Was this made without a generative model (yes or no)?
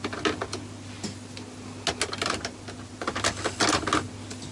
yes